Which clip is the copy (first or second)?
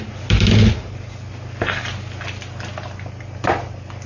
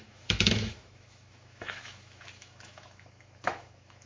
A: second